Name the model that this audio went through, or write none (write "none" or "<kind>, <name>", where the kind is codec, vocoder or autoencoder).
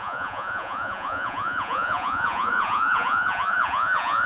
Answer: vocoder, Vocos